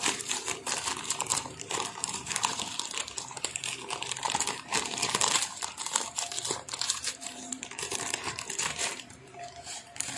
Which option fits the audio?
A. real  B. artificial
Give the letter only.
B